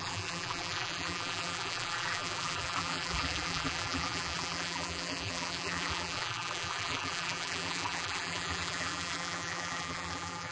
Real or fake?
fake